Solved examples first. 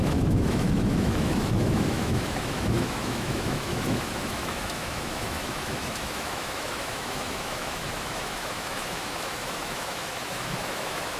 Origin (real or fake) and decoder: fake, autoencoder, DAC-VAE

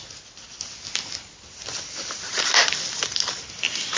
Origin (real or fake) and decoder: real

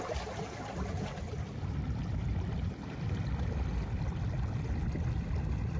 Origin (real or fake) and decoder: real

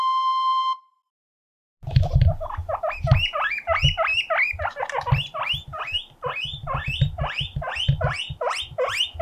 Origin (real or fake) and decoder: real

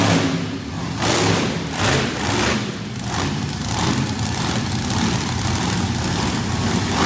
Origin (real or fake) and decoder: real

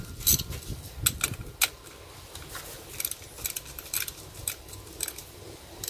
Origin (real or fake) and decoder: real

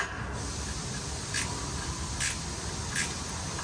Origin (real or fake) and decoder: real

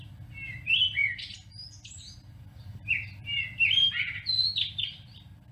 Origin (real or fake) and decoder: real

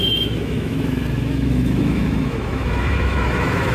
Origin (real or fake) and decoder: fake, autoencoder, DAC-VAE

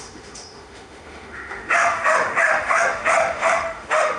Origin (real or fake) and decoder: fake, autoencoder, DAC-VAE